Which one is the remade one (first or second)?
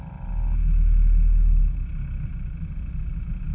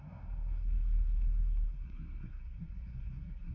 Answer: second